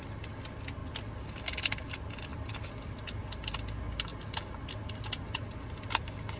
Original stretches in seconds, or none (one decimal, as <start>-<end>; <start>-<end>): 0.0-6.4